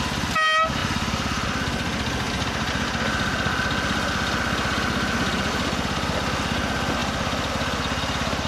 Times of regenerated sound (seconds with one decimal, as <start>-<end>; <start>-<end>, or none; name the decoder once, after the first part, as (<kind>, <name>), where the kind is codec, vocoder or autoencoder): none